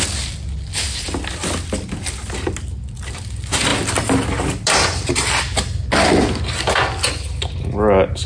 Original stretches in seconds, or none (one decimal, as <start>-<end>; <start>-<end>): 0.0-8.3